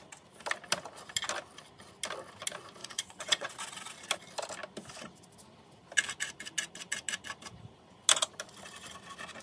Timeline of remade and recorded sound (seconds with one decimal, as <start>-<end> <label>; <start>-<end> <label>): 0.0-2.8 recorded; 2.8-3.5 remade; 3.5-9.4 recorded